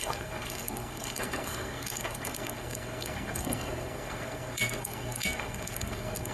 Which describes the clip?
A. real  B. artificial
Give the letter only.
B